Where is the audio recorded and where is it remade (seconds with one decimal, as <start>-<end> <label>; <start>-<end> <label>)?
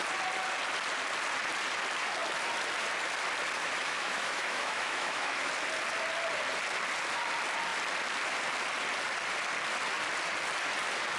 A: 0.0-3.6 recorded; 3.6-5.5 remade; 5.5-11.2 recorded